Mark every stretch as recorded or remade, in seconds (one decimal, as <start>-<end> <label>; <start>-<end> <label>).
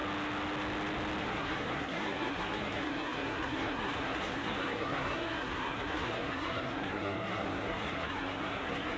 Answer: 0.0-1.2 recorded; 1.2-9.0 remade